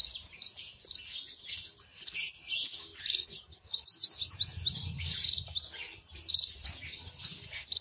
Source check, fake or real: real